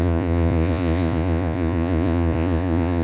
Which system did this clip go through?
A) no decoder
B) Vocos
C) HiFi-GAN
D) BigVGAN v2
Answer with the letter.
B